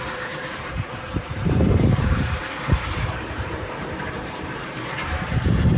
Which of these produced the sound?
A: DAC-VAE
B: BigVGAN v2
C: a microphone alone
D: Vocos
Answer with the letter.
B